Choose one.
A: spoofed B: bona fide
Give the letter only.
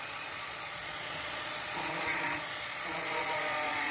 A